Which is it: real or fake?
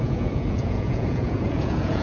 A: fake